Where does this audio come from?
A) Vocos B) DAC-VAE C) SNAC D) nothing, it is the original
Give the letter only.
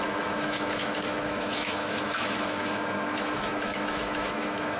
B